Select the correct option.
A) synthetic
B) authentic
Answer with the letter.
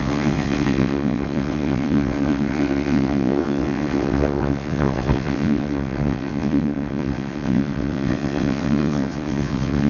A